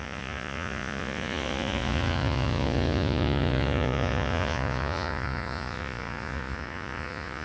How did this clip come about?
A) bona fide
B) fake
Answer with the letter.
B